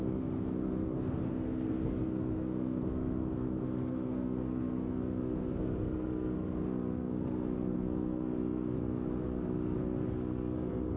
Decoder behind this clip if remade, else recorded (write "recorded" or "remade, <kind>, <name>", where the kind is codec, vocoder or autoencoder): remade, codec, SNAC